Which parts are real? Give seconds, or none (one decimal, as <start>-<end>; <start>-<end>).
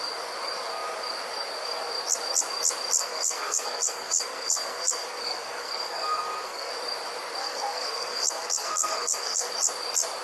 0.0-3.0; 6.7-7.4; 9.5-10.2